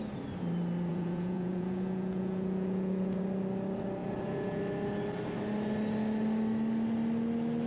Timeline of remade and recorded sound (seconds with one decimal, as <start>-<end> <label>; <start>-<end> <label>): 0.0-0.9 recorded; 0.9-3.2 remade; 3.2-4.0 recorded; 4.0-4.6 remade; 4.6-7.7 recorded